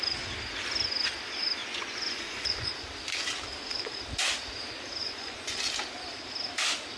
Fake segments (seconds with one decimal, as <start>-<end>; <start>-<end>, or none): 1.6-2.7; 5.0-5.6